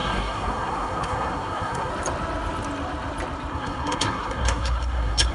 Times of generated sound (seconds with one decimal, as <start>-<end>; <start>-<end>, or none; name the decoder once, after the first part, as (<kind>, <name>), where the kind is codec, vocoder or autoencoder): 0.0-1.9 (codec, SNAC); 3.5-5.3